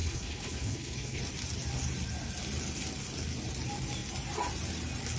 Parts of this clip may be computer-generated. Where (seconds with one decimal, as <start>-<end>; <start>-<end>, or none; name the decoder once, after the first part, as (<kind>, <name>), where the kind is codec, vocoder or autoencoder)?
0.0-1.3 (codec, HILCodec)